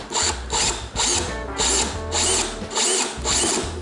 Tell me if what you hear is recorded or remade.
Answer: recorded